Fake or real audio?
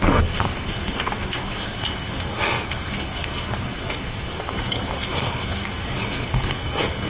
fake